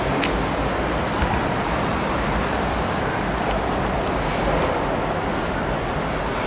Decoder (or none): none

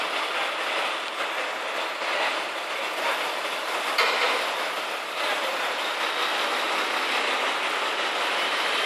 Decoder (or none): none